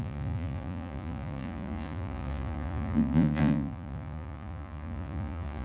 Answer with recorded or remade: remade